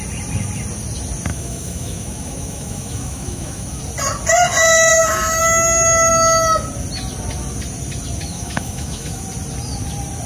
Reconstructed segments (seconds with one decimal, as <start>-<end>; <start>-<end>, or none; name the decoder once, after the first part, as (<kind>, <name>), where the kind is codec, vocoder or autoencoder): 1.3-3.8 (autoencoder, DAC-VAE); 4.9-5.4; 8.3-9.2